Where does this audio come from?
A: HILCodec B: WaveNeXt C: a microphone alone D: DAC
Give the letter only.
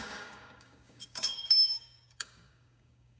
D